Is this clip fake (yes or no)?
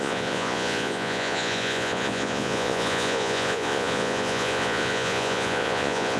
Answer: yes